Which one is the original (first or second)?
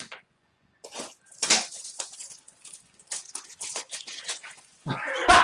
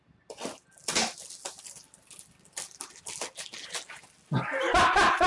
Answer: second